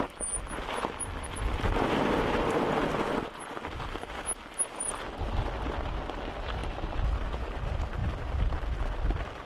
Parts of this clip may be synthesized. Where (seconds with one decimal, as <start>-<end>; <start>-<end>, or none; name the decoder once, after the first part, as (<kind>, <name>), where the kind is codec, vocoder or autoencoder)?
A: none